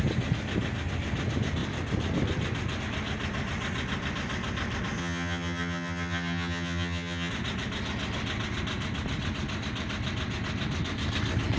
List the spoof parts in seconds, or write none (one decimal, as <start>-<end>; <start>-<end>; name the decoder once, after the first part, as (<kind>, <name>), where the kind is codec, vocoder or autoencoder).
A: 5.0-7.3 (vocoder, HiFi-GAN)